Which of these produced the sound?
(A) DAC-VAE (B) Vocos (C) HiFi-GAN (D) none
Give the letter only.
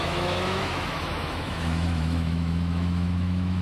A